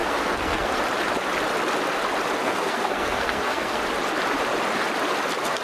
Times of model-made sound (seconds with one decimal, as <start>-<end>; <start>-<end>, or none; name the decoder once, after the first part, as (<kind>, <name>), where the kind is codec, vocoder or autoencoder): 0.0-0.8 (codec, SNAC); 2.4-3.8